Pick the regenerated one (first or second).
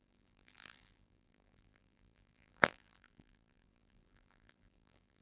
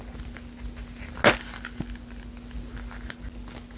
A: first